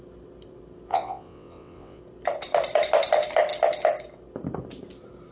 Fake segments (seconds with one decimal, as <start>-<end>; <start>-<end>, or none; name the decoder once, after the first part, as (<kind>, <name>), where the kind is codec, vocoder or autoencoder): 0.9-2.0 (vocoder, WaveNeXt)